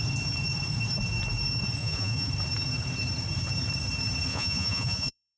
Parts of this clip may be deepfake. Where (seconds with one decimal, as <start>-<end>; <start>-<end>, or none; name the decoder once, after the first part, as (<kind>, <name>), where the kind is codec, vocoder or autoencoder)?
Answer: 1.8-2.3 (vocoder, Vocos); 4.3-5.4